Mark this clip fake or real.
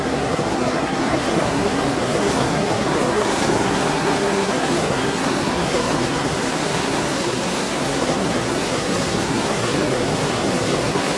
fake